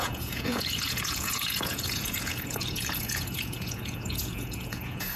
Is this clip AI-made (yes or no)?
yes